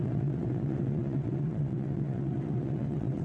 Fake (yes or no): yes